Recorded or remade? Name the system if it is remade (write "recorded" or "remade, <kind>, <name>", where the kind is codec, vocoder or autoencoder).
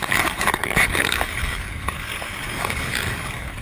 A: remade, codec, DAC